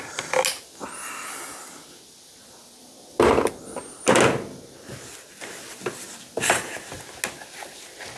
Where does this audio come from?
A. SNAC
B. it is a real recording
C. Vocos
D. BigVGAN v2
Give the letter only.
B